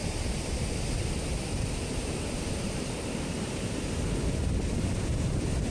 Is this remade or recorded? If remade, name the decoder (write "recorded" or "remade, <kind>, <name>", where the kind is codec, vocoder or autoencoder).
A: recorded